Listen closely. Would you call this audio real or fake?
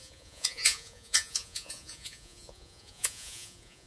fake